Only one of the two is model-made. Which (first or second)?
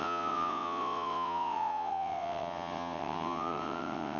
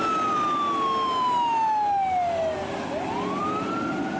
first